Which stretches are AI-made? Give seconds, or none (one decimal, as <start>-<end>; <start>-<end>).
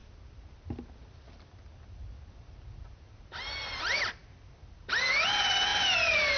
5.7-6.4